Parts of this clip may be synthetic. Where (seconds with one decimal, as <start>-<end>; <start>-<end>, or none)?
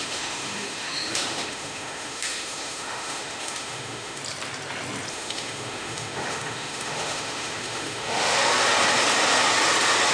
0.0-4.2; 5.1-8.5